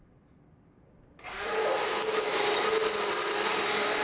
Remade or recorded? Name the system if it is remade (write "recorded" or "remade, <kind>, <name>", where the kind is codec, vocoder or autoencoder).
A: recorded